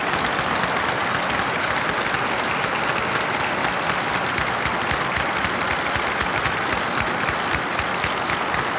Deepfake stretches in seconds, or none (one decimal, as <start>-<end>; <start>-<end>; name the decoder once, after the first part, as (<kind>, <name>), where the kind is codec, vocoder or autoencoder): none